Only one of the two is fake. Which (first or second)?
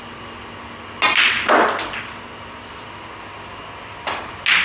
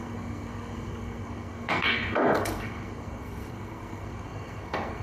second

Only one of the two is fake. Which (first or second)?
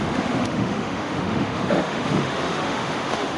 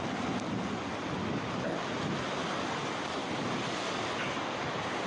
first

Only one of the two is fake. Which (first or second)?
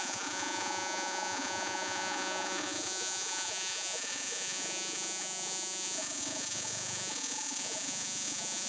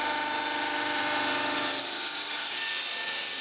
first